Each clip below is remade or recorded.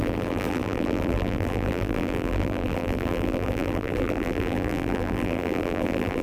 remade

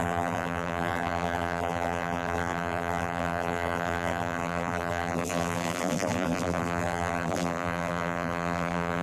remade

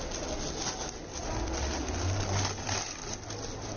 recorded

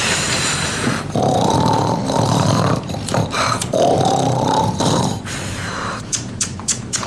remade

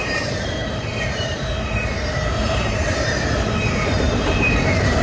remade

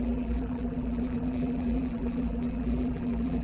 remade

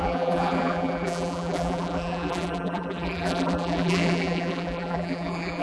remade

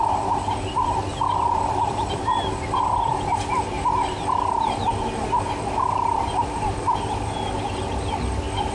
remade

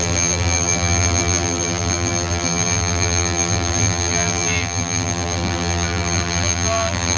remade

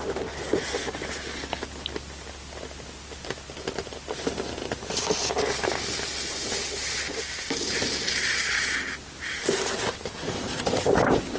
recorded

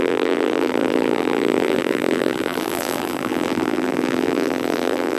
remade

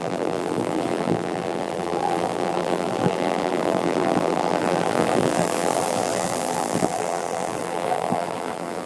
remade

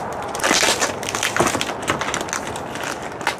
recorded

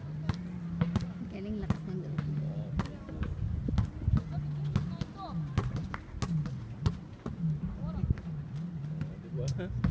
recorded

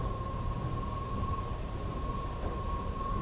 remade